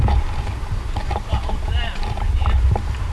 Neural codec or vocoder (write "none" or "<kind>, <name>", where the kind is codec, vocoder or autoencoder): none